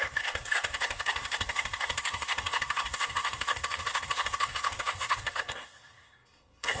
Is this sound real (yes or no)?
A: no